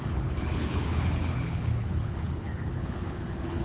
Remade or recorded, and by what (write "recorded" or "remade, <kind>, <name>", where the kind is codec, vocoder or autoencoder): remade, codec, HILCodec